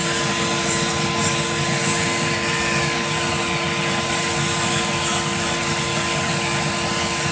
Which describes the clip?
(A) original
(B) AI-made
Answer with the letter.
A